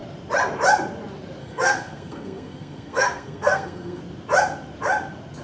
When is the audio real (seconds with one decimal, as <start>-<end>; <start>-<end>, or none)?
0.0-1.4; 4.0-5.4